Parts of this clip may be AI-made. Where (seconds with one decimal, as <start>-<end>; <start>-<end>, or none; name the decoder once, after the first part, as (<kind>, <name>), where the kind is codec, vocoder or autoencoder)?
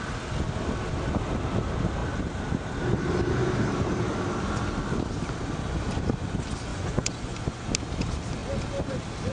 6.7-7.7 (vocoder, Vocos)